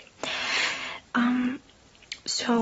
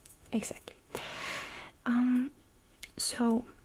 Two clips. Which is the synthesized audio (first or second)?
second